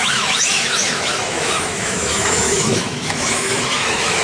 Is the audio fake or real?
fake